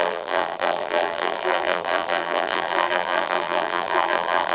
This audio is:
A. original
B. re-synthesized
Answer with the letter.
B